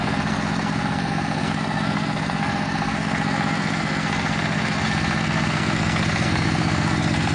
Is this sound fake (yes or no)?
yes